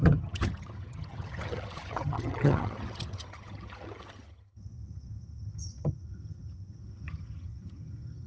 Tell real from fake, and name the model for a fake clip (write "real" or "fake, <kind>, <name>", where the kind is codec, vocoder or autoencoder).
fake, vocoder, HiFi-GAN